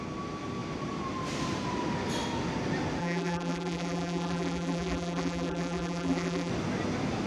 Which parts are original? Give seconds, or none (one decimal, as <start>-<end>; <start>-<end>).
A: 0.0-3.0; 6.5-7.3